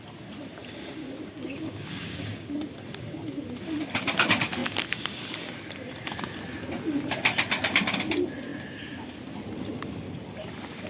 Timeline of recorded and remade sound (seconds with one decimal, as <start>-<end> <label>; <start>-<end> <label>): 0.0-1.0 recorded; 1.0-2.5 remade; 2.5-10.9 recorded